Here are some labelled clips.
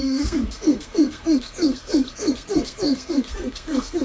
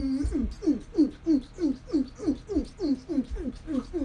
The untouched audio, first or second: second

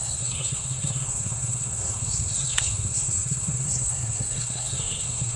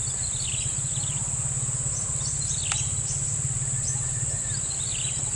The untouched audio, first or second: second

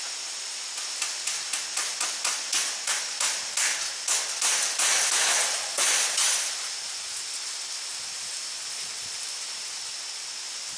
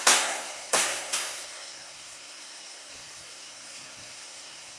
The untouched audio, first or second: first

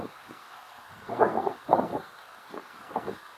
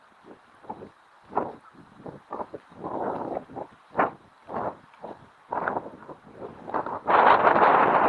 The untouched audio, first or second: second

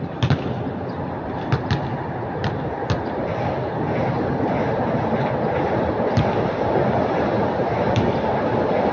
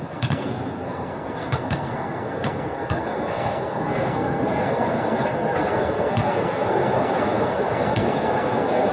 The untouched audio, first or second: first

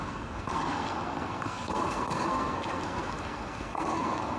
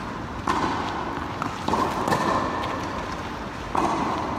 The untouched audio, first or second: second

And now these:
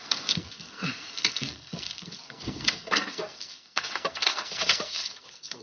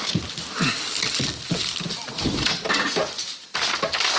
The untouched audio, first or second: second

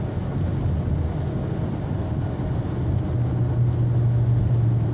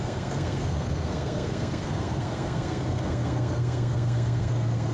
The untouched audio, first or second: first